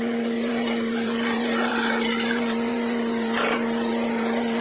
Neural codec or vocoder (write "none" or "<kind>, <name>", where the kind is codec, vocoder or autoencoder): vocoder, BigVGAN v2